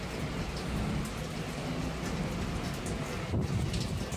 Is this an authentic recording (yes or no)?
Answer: yes